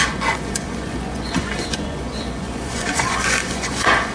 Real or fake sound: fake